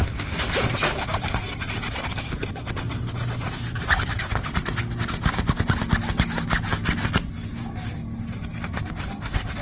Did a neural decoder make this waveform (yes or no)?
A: no